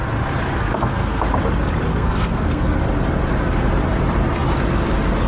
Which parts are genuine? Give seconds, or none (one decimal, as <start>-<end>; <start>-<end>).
0.0-0.6; 1.2-1.9; 2.8-5.3